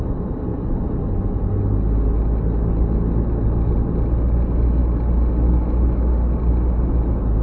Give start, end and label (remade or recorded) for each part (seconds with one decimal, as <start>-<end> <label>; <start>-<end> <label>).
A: 0.0-7.4 recorded